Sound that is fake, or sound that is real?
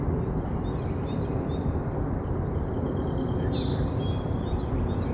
real